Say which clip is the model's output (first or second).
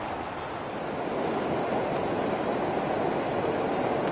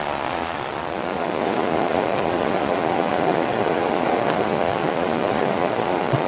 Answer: second